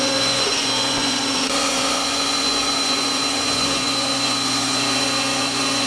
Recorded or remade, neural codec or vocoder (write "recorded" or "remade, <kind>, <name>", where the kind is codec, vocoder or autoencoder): remade, vocoder, Vocos